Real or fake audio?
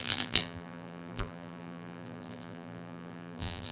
fake